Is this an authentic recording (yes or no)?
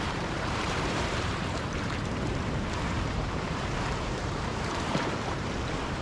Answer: no